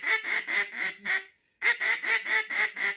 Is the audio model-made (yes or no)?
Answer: yes